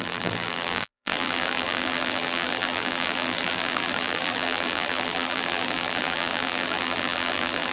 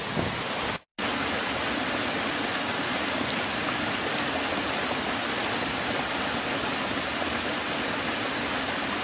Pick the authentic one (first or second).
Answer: second